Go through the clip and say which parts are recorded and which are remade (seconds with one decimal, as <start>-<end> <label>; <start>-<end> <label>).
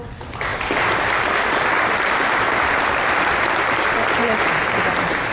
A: 0.0-4.2 remade; 4.2-4.8 recorded; 4.8-5.3 remade